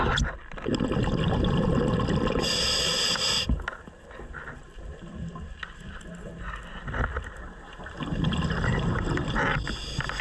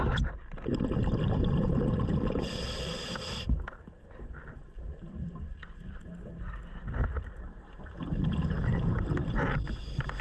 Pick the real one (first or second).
first